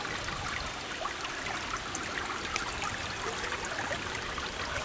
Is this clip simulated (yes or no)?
no